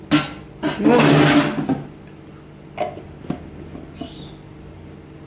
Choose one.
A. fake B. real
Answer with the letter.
B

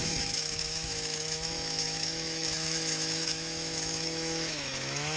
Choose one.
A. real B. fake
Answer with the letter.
B